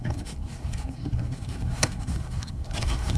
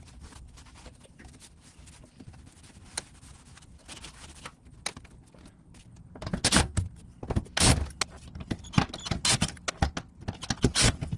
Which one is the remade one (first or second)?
first